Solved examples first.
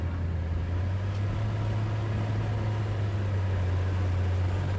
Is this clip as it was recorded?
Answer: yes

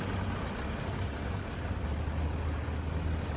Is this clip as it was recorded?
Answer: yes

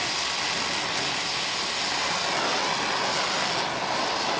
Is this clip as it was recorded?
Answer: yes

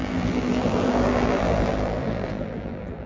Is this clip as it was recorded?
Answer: no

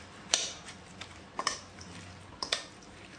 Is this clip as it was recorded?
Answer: no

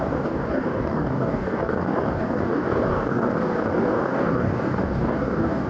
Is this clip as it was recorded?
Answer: no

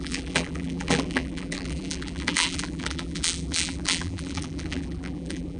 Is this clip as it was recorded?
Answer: no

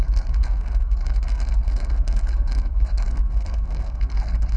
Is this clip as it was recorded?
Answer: no